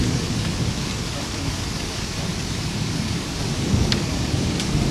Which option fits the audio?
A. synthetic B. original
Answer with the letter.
A